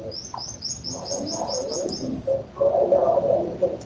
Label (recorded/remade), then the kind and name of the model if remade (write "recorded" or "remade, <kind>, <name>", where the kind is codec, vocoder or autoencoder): recorded